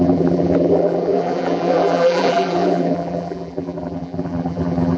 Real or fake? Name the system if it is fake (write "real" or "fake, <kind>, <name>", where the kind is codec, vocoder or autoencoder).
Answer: fake, vocoder, BigVGAN v2